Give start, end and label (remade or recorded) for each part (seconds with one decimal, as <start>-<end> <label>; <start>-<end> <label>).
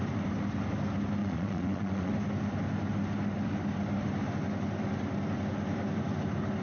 0.0-1.2 recorded; 1.2-2.1 remade; 2.1-6.6 recorded